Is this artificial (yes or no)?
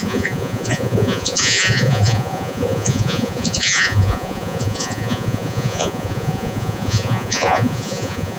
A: yes